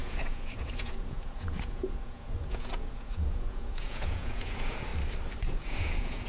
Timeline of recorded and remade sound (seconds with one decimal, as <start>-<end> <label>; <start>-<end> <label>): 0.0-4.9 remade; 4.9-5.4 recorded; 5.4-6.3 remade